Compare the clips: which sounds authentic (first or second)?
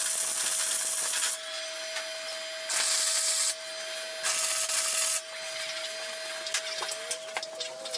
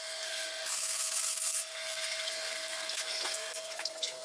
first